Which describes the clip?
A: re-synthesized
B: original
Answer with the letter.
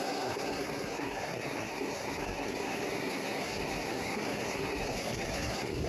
A